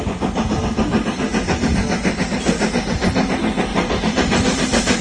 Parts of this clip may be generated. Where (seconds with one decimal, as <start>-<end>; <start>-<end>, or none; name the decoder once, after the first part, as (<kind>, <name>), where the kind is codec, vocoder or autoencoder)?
3.7-5.0 (vocoder, BigVGAN v2)